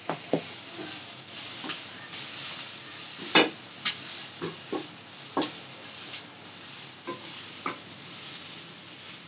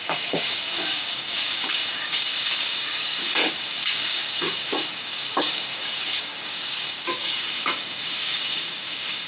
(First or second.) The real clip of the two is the first